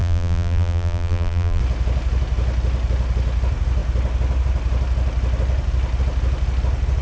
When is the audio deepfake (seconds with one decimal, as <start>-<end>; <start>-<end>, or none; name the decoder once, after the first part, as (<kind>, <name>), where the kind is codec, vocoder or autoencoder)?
0.0-1.6 (vocoder, BigVGAN v2)